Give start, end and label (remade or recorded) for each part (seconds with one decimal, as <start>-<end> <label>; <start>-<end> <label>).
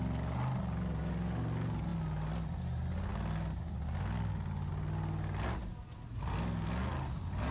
0.0-7.5 recorded